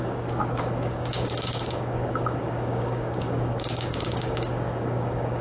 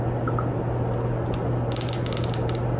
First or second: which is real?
second